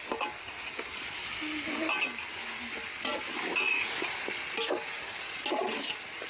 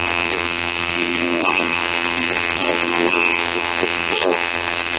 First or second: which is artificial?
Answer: second